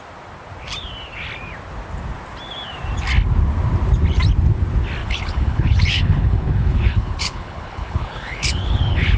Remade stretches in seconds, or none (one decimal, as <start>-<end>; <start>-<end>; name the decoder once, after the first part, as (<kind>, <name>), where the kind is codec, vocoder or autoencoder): 5.0-9.2 (codec, HILCodec)